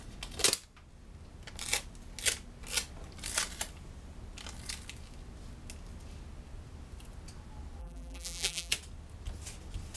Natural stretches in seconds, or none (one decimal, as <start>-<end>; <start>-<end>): 0.0-7.8; 8.7-10.0